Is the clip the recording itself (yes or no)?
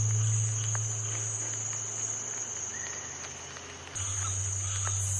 yes